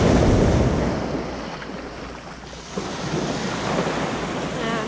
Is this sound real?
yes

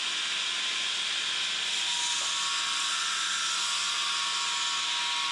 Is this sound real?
yes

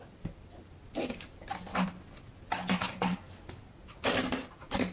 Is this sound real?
yes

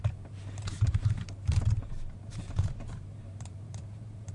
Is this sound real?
no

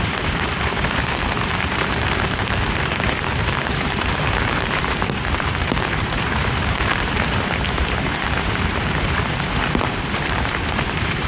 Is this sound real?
no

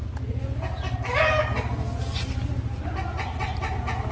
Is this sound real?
yes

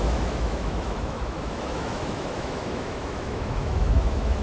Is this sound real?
no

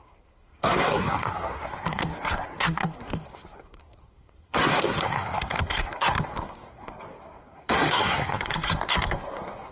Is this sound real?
no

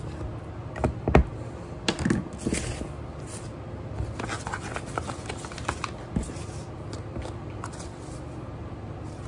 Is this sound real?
yes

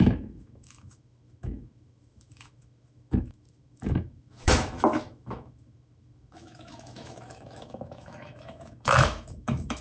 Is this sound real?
no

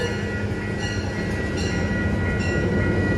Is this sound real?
yes